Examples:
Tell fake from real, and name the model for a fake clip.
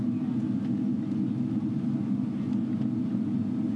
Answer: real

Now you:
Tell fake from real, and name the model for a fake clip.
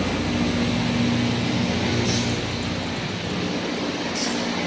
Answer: real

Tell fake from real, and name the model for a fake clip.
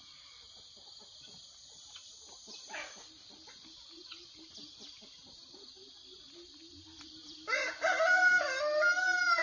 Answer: real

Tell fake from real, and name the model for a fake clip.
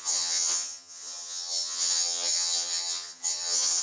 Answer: fake, vocoder, HiFi-GAN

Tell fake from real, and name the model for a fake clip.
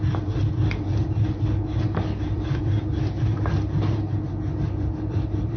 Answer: fake, vocoder, BigVGAN v2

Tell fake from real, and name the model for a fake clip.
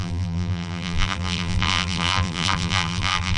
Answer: fake, vocoder, BigVGAN v2